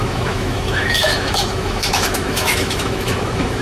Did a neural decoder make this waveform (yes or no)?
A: yes